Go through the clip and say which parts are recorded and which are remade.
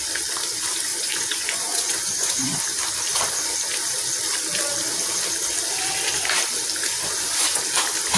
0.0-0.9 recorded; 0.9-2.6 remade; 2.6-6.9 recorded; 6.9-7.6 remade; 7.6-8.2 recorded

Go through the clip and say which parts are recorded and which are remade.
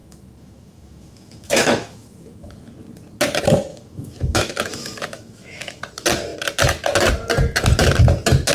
0.0-2.7 remade; 2.7-3.7 recorded; 3.7-5.8 remade; 5.8-8.5 recorded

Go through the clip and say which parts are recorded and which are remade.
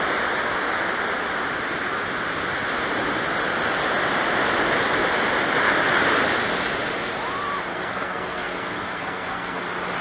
0.0-7.7 recorded; 7.7-9.6 remade; 9.6-10.0 recorded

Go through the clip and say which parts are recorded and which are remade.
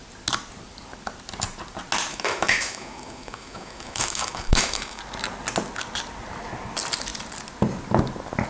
0.0-2.1 recorded; 2.1-5.0 remade; 5.0-8.5 recorded